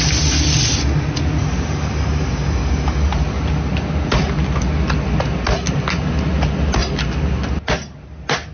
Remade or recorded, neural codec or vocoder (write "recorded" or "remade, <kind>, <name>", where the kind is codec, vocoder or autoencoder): recorded